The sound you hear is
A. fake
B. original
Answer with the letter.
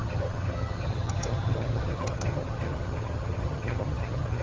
A